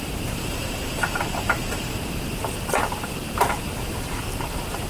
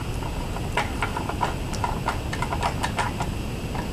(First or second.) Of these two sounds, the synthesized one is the first